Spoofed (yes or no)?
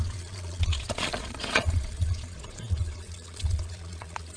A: yes